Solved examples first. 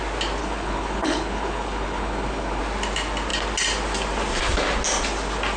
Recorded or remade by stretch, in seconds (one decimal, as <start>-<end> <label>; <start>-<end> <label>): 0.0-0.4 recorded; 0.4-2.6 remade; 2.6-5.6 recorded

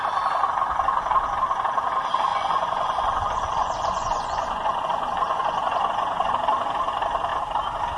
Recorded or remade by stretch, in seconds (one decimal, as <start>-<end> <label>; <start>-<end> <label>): 0.0-2.3 recorded; 2.3-6.3 remade; 6.3-8.0 recorded

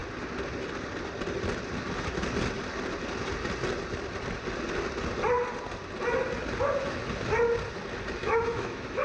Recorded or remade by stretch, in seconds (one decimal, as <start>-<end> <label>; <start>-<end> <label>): 0.0-8.2 recorded; 8.2-9.0 remade